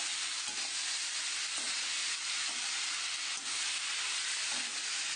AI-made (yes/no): no